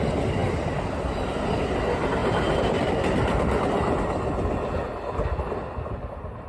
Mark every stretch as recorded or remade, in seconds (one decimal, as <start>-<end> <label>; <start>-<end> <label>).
0.0-6.5 recorded